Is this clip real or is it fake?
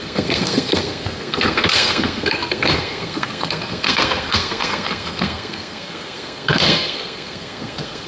fake